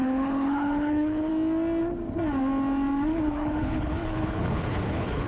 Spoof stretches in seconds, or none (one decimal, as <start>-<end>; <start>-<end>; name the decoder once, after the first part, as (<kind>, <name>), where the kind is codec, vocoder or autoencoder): 0.0-1.3 (codec, HILCodec); 3.1-5.3